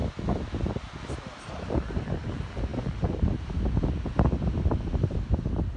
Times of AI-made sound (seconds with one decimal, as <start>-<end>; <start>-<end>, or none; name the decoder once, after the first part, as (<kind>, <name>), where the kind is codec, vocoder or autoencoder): none